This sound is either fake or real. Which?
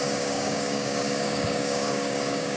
fake